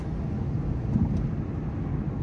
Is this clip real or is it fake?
real